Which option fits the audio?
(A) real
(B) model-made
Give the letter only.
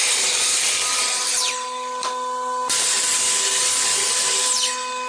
A